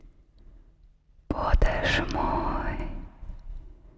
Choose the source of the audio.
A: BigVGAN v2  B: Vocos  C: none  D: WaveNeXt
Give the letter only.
C